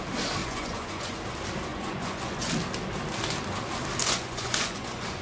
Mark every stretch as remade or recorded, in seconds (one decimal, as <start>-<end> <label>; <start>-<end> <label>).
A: 0.0-0.4 recorded; 0.4-1.2 remade; 1.2-1.7 recorded; 1.7-2.5 remade; 2.5-4.0 recorded; 4.0-5.2 remade